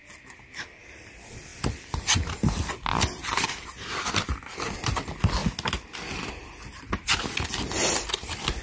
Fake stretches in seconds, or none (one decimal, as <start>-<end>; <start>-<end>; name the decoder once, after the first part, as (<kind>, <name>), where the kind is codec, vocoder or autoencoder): none